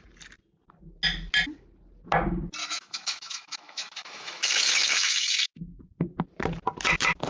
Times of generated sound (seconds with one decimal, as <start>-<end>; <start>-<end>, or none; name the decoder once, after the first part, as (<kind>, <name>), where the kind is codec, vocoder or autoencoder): 2.6-5.5 (autoencoder, DAC-VAE)